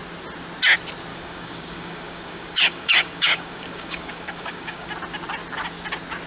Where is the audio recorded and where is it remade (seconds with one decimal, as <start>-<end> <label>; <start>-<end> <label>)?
0.0-1.1 recorded; 1.1-4.9 remade; 4.9-6.3 recorded